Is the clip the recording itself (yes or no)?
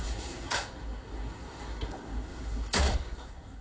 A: no